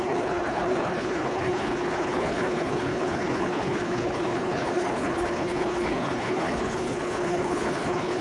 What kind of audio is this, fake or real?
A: fake